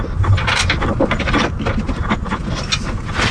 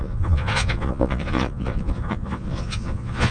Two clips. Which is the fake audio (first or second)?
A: second